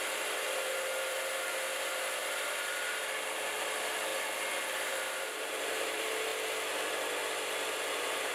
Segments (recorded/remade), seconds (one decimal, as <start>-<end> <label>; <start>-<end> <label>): 0.0-4.1 remade; 4.1-4.6 recorded; 4.6-6.3 remade; 6.3-7.7 recorded; 7.7-8.3 remade